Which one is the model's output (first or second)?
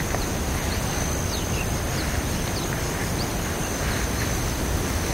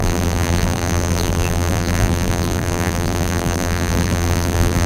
second